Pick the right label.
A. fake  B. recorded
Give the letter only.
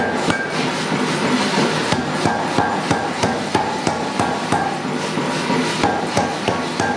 B